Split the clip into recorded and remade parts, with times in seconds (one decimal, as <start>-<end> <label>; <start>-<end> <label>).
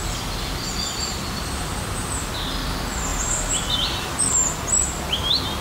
0.0-2.3 remade; 2.3-3.1 recorded; 3.1-4.2 remade; 4.2-5.6 recorded